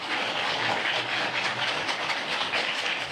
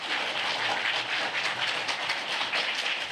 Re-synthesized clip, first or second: first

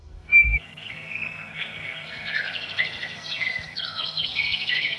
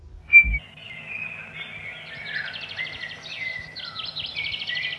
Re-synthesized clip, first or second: first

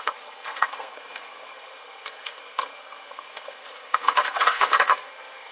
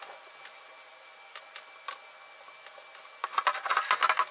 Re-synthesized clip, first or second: first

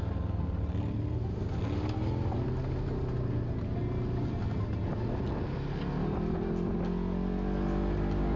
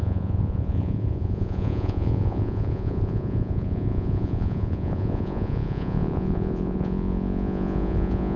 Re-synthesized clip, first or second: second